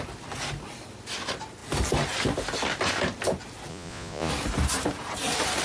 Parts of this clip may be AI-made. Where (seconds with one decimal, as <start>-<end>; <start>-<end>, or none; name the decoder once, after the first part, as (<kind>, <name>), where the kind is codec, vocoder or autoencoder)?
3.7-4.3 (vocoder, Vocos)